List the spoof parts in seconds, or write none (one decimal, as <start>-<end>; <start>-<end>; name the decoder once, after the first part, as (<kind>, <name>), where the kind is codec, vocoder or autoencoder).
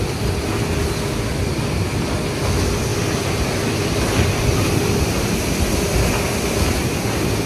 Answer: none